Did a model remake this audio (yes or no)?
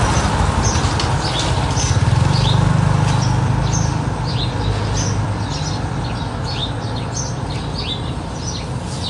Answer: no